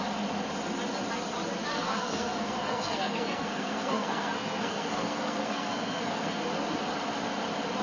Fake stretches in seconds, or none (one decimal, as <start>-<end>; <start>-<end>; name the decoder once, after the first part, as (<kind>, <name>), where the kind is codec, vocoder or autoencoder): 1.7-6.4 (codec, SNAC)